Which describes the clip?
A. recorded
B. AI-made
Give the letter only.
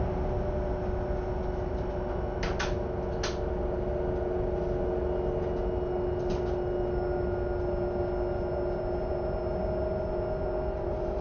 A